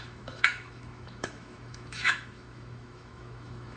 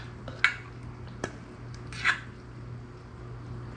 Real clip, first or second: second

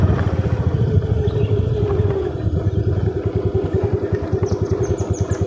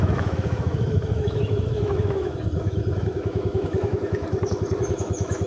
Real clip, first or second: first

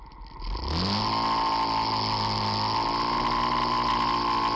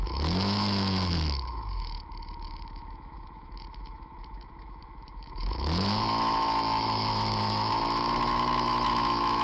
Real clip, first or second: first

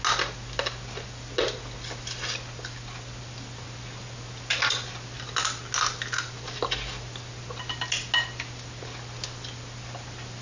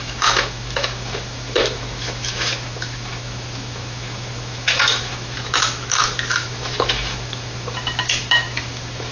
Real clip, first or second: first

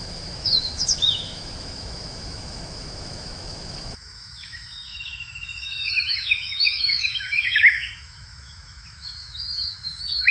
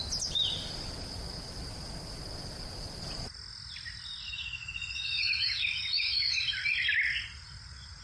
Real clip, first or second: second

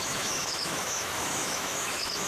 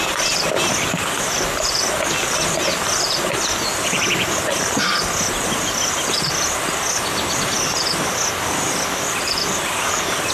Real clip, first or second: second